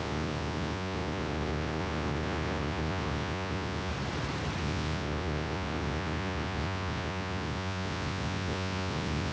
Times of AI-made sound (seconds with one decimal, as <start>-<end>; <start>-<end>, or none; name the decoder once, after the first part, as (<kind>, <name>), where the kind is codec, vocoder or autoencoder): 0.0-3.9 (vocoder, Vocos); 4.6-9.3

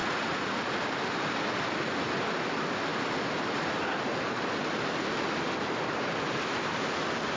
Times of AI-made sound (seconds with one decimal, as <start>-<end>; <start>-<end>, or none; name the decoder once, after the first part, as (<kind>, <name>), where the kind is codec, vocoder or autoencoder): 0.0-0.8 (vocoder, Vocos)

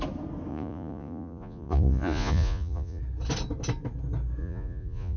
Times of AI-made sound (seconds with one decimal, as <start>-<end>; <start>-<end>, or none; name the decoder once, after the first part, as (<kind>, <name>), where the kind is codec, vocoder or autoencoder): 0.5-3.0 (vocoder, Vocos); 4.4-5.2

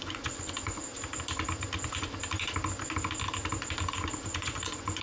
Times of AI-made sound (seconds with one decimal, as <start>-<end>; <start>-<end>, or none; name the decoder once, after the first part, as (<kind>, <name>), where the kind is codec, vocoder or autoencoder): 0.0-0.8 (vocoder, Vocos); 3.8-5.0

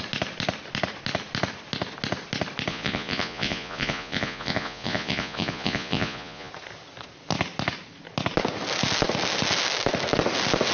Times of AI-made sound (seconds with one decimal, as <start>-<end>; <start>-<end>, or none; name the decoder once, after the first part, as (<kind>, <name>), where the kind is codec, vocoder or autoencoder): 2.7-6.5 (vocoder, Vocos)